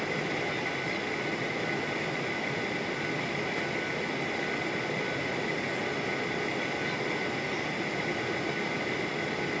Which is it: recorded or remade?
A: recorded